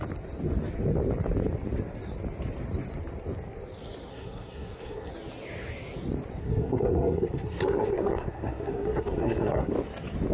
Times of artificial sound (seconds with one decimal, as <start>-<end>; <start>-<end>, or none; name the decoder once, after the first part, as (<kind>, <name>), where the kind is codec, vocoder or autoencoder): 4.1-5.1 (codec, SNAC); 6.4-9.7